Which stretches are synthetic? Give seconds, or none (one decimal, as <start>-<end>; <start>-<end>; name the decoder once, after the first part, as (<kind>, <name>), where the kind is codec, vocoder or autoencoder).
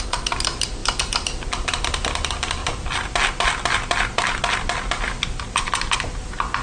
none